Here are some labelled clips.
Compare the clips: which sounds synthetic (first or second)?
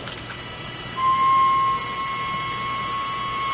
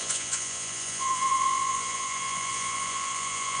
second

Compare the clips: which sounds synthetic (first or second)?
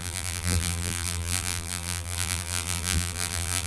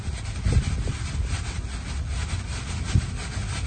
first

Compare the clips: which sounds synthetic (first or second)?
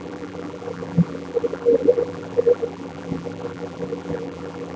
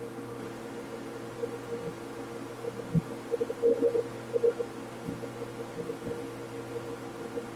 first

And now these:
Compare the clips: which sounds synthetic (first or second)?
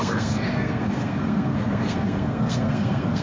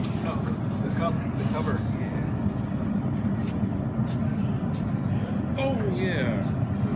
first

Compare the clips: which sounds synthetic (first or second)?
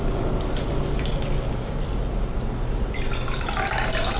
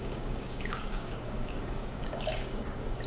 second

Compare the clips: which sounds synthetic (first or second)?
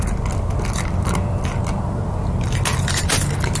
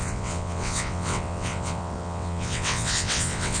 second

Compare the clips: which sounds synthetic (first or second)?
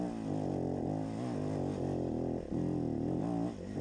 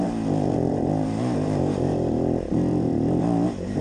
second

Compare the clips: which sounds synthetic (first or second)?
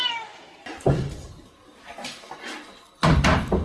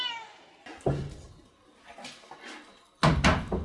first